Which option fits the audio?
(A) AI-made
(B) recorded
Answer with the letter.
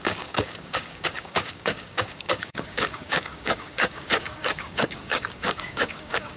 A